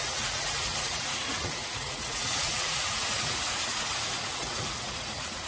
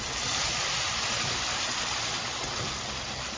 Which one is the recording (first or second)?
second